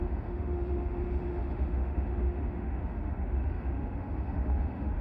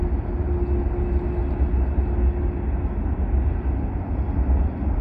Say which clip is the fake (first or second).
first